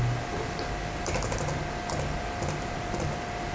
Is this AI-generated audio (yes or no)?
yes